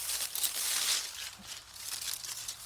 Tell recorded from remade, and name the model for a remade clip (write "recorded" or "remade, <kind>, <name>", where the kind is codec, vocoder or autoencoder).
recorded